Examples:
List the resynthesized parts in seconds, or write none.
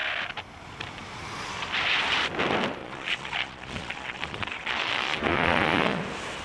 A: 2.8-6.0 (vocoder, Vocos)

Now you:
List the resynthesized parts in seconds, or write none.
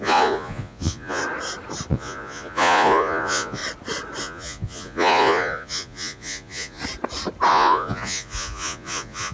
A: 0.0-1.2 (vocoder, Vocos); 1.9-3.6; 4.2-6.8; 7.5-9.3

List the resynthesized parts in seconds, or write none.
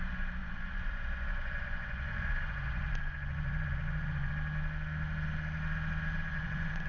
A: 0.4-4.3 (vocoder, Vocos); 6.3-6.9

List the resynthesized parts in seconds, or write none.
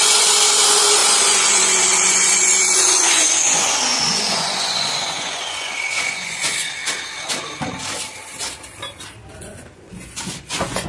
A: 0.0-6.8 (vocoder, Vocos); 9.4-10.9